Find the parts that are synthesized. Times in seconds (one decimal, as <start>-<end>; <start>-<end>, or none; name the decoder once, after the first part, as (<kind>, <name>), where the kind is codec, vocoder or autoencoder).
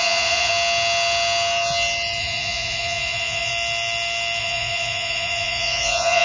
0.0-0.5 (vocoder, Vocos); 2.2-3.5; 4.4-6.2